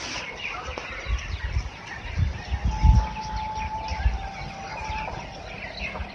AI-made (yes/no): no